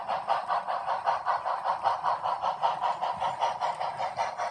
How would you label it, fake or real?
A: real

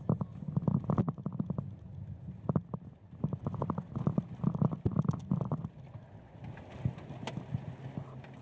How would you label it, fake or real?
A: real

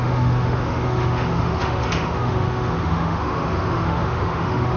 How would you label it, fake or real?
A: fake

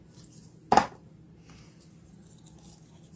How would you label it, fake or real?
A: real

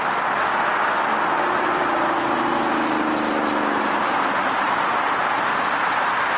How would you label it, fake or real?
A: real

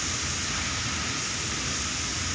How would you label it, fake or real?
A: real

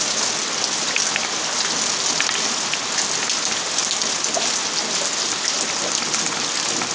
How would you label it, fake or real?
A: real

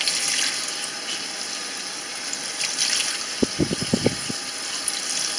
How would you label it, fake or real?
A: real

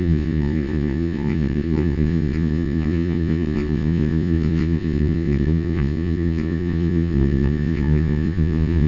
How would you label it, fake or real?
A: fake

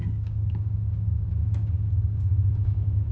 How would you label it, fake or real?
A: fake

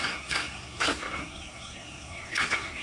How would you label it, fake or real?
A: fake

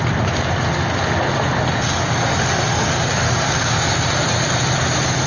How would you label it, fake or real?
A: real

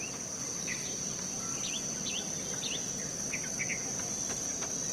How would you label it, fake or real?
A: real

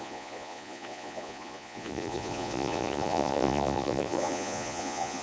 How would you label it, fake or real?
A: fake